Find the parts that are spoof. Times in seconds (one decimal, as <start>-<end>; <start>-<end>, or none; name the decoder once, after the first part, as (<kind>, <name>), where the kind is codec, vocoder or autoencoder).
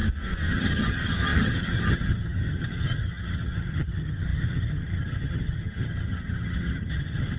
0.5-7.4 (vocoder, HiFi-GAN)